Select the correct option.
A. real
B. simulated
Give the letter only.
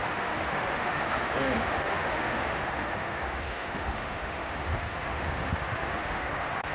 B